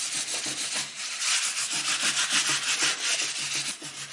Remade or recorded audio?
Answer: recorded